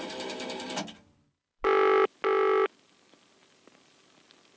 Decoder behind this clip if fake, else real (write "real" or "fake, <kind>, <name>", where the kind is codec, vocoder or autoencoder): real